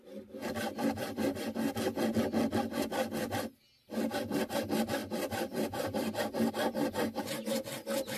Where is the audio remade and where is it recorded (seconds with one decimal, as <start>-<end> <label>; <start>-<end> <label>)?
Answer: 0.0-5.0 recorded; 5.0-6.5 remade; 6.5-8.2 recorded

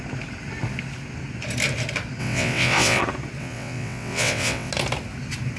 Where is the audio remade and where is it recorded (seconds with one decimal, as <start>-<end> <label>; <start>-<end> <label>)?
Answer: 0.0-2.2 recorded; 2.2-3.0 remade; 3.0-3.4 recorded; 3.4-4.7 remade; 4.7-5.6 recorded

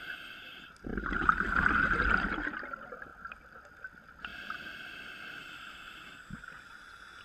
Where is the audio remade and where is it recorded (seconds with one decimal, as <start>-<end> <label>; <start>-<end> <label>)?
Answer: 0.0-7.2 recorded

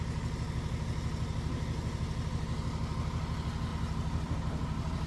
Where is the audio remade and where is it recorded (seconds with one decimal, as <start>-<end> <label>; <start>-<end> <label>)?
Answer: 0.0-3.7 recorded; 3.7-5.1 remade

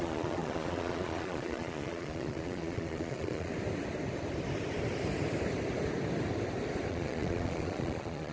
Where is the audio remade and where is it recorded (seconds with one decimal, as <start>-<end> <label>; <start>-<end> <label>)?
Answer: 0.0-3.5 remade; 3.5-6.9 recorded; 6.9-8.3 remade

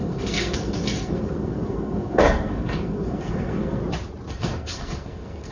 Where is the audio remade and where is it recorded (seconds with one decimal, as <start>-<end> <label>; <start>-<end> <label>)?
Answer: 0.0-3.8 remade; 3.8-4.3 recorded; 4.3-5.5 remade

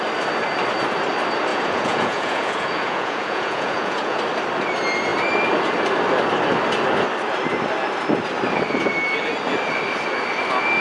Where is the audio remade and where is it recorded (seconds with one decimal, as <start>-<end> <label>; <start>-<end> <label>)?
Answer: 0.0-1.5 recorded; 1.5-4.2 remade; 4.2-10.8 recorded

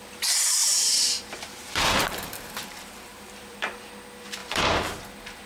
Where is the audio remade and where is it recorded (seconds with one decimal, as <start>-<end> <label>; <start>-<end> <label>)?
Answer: 0.0-0.6 recorded; 0.6-3.9 remade; 3.9-4.4 recorded; 4.4-5.0 remade; 5.0-5.5 recorded